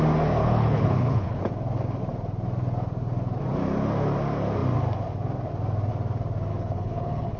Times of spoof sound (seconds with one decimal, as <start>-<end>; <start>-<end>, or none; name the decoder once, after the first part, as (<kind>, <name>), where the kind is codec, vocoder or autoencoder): 0.4-1.4 (codec, HILCodec); 6.5-7.4